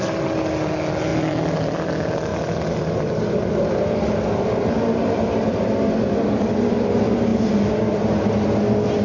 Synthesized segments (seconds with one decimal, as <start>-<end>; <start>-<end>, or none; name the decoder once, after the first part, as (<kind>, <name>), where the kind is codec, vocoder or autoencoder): 1.1-1.9 (vocoder, BigVGAN v2); 2.3-6.0